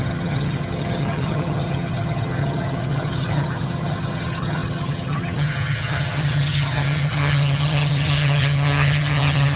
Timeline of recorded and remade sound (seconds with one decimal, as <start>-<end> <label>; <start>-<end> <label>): 0.0-9.6 remade